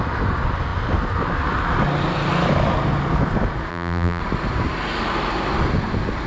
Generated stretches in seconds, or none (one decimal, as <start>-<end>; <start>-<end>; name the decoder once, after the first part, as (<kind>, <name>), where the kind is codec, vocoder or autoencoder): 3.7-4.2 (vocoder, BigVGAN v2)